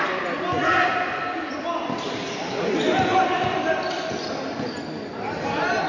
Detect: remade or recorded recorded